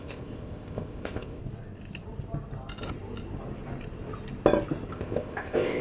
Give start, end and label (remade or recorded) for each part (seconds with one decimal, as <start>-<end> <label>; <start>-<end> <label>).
0.0-1.4 remade; 1.4-4.9 recorded; 4.9-5.8 remade